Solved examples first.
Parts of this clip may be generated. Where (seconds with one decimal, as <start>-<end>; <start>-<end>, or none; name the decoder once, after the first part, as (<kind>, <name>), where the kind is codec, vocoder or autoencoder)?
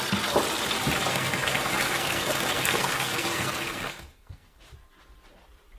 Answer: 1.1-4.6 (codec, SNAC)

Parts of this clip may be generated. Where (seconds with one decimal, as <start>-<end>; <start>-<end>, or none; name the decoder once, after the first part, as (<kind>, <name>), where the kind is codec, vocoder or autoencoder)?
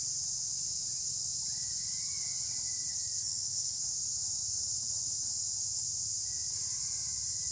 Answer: 2.9-3.8 (codec, SNAC)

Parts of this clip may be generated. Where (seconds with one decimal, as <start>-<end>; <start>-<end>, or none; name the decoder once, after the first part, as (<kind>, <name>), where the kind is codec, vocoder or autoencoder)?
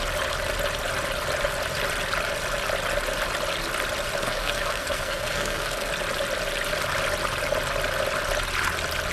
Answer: 4.2-5.9 (codec, SNAC)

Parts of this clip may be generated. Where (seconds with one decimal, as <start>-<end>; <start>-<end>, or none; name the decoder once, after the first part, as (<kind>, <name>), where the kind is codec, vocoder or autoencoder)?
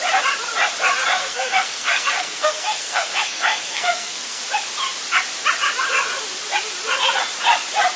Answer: 1.2-4.4 (codec, SNAC)